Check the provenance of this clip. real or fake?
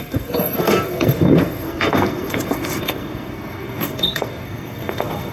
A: fake